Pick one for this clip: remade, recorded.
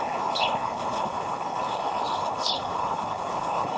remade